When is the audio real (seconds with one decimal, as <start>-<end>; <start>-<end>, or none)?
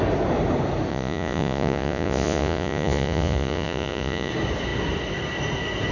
0.0-0.9; 4.3-5.9